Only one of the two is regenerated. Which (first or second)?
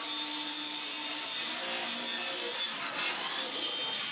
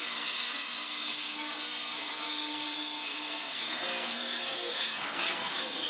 second